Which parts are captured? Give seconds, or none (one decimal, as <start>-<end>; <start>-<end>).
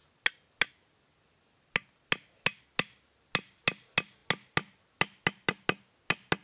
0.0-6.4